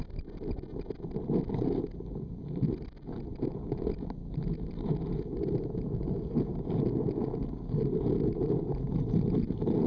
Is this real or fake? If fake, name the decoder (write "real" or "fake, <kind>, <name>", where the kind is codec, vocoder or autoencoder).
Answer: real